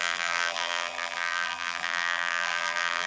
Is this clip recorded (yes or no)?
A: no